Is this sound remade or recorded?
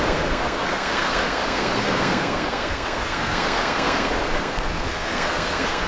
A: remade